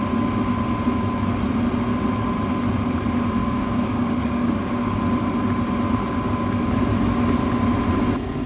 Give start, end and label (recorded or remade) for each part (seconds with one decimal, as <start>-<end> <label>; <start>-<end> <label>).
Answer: 0.0-3.4 recorded; 3.4-5.0 remade; 5.0-8.5 recorded